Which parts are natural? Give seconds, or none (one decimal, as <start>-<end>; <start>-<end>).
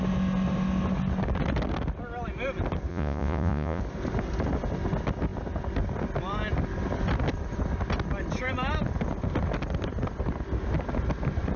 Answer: 0.0-2.9; 3.8-11.6